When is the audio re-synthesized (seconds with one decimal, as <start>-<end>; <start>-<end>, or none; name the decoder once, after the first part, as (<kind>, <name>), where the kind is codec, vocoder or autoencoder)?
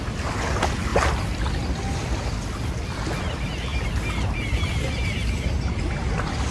none